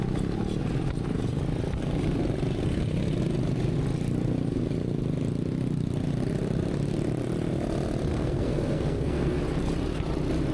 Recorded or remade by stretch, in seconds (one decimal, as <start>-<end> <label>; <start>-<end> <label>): 0.0-8.1 recorded; 8.1-9.4 remade; 9.4-10.5 recorded